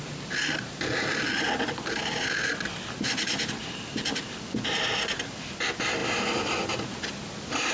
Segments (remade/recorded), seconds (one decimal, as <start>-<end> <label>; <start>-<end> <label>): 0.0-2.5 recorded; 2.5-4.2 remade; 4.2-7.7 recorded